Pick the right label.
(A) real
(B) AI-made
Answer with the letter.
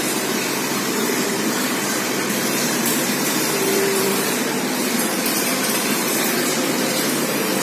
B